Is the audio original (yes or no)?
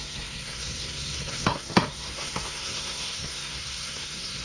no